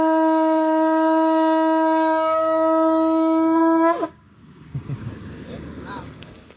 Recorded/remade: remade